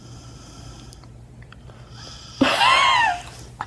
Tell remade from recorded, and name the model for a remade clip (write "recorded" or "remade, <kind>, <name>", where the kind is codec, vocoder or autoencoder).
recorded